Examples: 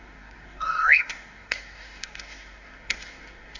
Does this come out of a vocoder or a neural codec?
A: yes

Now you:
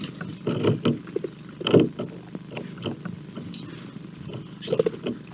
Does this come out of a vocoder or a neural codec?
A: no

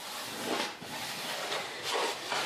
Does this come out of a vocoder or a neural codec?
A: no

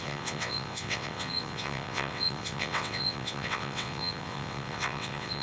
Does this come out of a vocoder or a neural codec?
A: yes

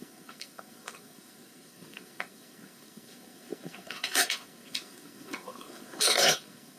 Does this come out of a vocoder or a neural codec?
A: yes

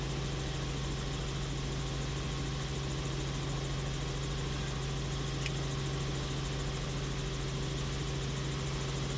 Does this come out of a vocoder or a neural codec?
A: no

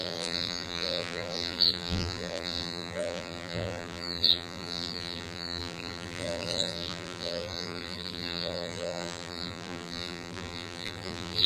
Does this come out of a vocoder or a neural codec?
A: yes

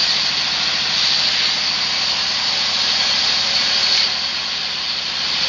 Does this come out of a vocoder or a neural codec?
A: no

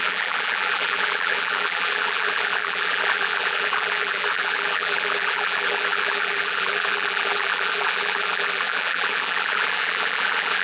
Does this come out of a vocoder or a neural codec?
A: yes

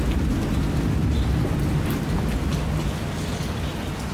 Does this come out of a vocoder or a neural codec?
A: no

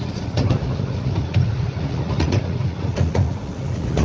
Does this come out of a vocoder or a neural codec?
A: yes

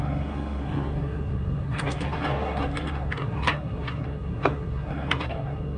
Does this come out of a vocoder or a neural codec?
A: yes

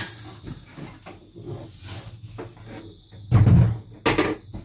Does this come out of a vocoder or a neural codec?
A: no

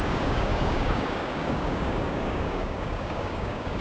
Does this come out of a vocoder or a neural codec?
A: yes